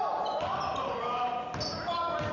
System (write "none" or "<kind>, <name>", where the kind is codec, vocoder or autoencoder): none